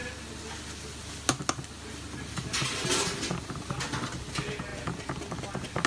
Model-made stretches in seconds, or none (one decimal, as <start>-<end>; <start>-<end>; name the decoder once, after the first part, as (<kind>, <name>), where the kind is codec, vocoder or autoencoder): none